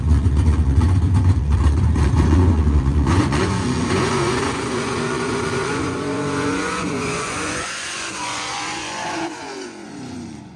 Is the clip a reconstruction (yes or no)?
yes